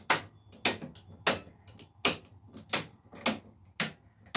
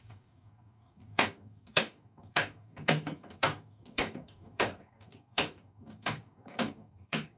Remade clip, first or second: second